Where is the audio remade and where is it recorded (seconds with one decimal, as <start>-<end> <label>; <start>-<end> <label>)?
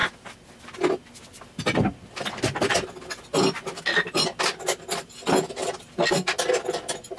0.0-7.2 recorded